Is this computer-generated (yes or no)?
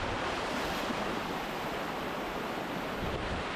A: no